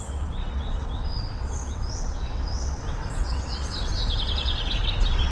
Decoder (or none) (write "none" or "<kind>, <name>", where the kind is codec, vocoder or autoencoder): vocoder, WaveNeXt